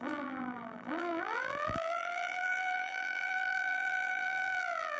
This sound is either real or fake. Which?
fake